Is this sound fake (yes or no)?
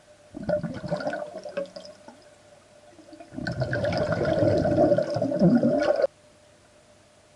no